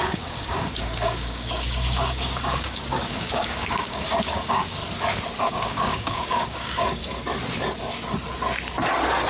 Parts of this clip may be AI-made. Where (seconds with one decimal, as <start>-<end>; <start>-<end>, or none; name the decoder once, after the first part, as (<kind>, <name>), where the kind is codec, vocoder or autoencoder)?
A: 0.0-4.8 (codec, DAC); 5.5-7.0